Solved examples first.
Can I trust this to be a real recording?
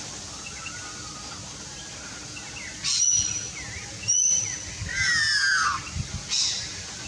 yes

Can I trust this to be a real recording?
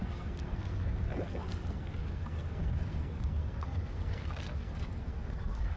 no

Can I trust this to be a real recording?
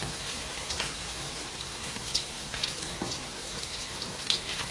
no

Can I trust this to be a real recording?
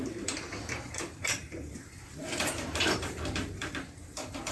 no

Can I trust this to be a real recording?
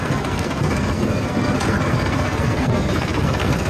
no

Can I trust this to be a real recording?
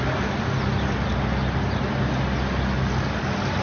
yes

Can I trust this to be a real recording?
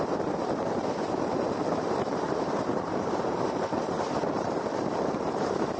no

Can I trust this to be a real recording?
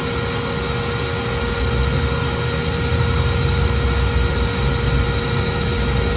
yes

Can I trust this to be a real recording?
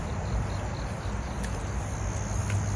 yes